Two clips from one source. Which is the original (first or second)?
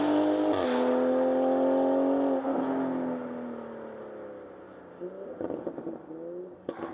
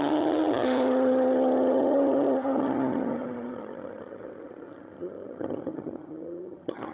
first